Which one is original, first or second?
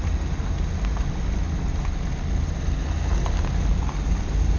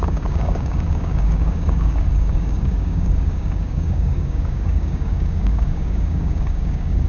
first